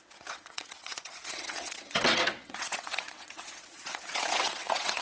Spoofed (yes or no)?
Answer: yes